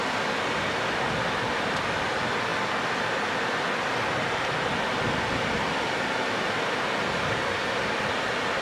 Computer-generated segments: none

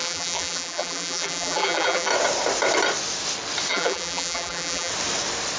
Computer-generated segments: 0.0-2.1 (vocoder, BigVGAN v2); 3.7-4.9

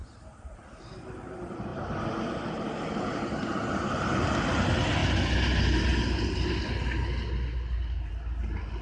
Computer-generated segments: none

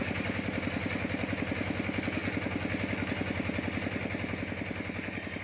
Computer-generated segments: none

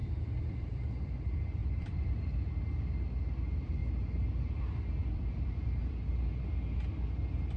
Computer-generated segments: 0.0-1.1 (vocoder, BigVGAN v2); 1.6-2.4; 5.0-6.2